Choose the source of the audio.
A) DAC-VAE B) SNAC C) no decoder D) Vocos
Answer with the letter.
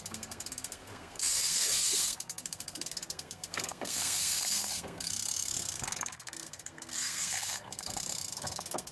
B